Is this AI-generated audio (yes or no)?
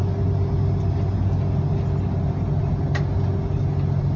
no